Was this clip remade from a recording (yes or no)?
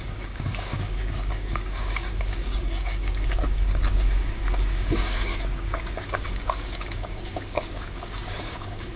yes